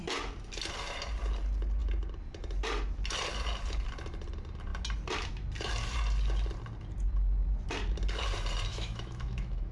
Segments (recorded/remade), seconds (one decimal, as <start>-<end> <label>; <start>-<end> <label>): 0.0-8.7 recorded; 8.7-9.7 remade